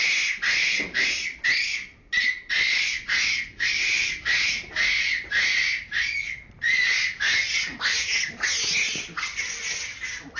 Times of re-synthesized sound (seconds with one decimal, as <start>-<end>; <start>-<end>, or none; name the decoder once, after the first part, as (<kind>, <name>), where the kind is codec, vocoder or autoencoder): none